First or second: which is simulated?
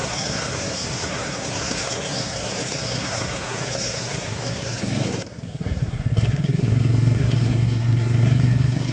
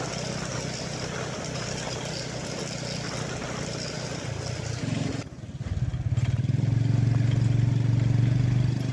first